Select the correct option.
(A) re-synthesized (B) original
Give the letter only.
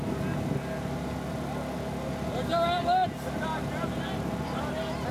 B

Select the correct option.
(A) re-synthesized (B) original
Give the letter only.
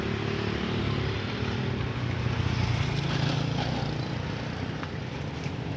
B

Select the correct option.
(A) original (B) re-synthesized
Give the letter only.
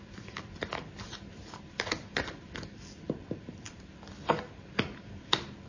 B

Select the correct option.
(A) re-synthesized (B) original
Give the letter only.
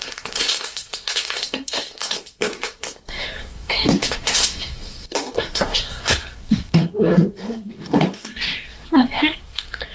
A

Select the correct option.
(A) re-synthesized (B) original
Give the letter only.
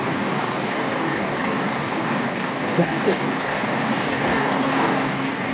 A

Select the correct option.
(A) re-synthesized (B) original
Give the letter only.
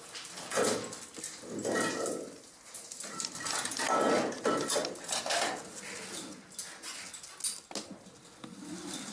B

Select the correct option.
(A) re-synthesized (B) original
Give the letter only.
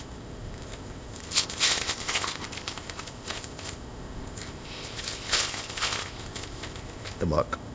A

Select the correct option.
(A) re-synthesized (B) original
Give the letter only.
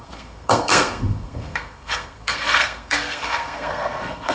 A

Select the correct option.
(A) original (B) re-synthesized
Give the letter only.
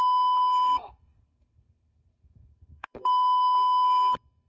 B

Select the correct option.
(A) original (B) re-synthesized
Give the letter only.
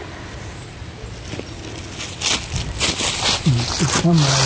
A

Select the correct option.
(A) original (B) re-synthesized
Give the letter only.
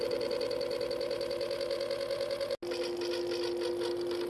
A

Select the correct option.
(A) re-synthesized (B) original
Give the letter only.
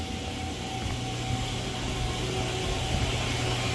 B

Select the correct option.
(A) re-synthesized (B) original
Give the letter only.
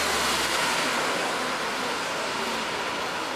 B